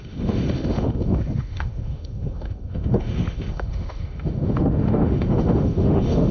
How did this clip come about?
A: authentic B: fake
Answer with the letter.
B